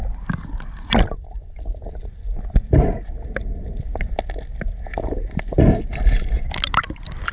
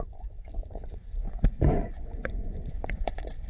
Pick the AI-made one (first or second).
second